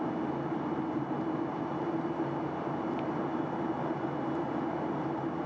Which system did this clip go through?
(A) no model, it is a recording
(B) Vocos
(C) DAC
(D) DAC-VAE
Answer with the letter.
A